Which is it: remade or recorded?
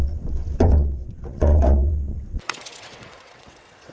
remade